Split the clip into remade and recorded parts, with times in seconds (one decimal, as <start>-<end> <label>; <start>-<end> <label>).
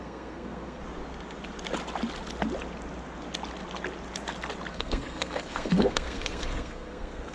0.0-0.8 remade; 0.8-4.7 recorded; 4.7-7.3 remade